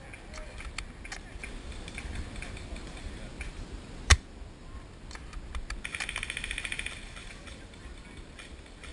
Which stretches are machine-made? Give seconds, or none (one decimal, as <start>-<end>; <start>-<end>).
1.4-4.1; 7.2-8.0